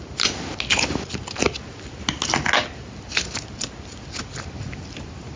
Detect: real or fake real